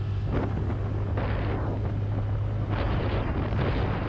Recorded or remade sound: recorded